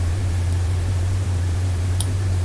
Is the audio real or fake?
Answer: fake